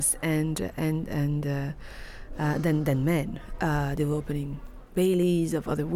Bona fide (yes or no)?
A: yes